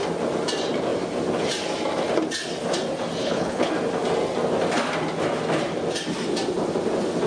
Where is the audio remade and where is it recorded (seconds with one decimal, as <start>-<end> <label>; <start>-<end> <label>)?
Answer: 0.0-3.2 recorded; 3.2-3.7 remade; 3.7-7.3 recorded